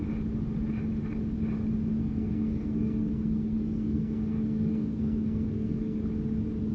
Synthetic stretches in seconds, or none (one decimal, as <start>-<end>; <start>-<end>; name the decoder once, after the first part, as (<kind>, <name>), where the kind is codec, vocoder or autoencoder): 2.0-6.0 (codec, SNAC)